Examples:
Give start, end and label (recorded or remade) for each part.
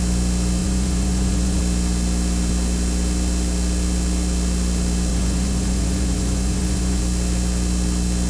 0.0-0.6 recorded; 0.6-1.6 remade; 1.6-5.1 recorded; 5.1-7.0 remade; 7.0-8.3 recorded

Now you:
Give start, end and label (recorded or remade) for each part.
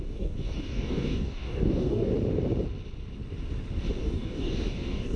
0.0-2.1 remade; 2.1-4.0 recorded; 4.0-5.2 remade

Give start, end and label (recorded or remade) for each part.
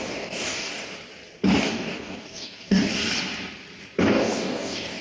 0.0-0.7 remade; 0.7-1.6 recorded; 1.6-3.0 remade; 3.0-4.0 recorded; 4.0-5.0 remade